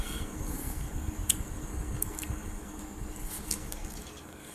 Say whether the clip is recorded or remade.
remade